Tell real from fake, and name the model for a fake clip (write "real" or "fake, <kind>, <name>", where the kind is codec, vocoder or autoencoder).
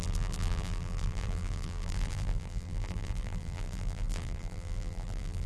fake, vocoder, BigVGAN v2